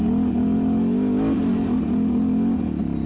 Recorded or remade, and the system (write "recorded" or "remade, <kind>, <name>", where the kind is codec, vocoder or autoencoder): recorded